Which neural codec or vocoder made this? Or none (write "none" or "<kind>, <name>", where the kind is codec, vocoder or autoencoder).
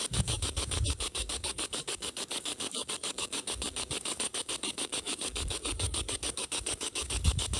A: codec, DAC